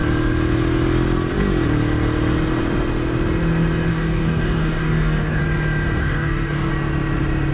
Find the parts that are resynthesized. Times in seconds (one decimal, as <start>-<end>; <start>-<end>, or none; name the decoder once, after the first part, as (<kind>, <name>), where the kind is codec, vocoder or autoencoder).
3.9-5.4 (codec, DAC); 6.0-6.7